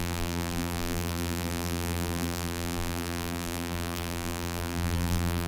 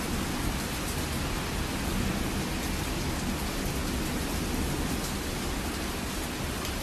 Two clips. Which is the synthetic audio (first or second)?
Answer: first